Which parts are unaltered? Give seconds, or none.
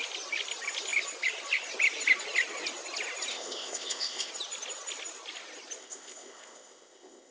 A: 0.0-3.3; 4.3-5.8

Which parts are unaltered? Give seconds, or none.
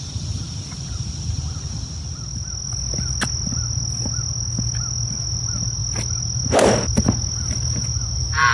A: 0.0-8.5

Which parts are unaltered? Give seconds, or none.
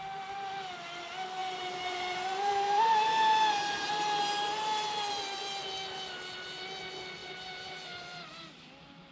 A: 0.0-1.4; 3.6-7.2; 8.4-9.1